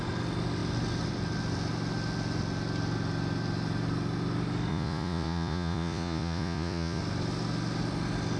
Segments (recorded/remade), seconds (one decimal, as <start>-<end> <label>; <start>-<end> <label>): 0.0-4.7 recorded; 4.7-7.0 remade; 7.0-8.4 recorded